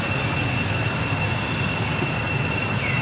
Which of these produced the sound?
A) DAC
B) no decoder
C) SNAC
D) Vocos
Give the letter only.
B